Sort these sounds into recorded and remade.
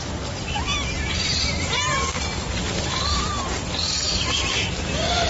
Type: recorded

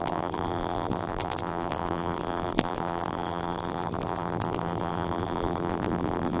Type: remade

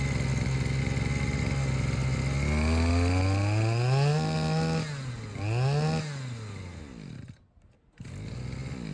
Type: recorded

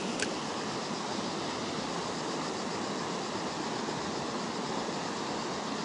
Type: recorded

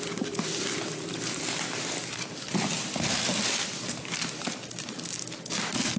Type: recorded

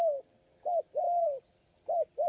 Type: remade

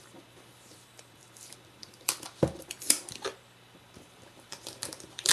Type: remade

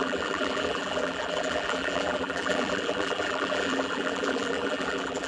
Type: remade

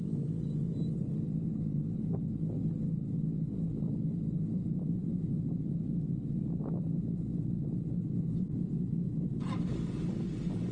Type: recorded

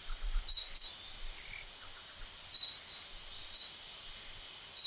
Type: recorded